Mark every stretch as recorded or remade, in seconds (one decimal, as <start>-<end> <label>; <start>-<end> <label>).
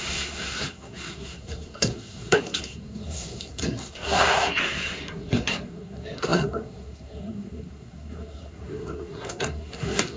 0.0-10.2 remade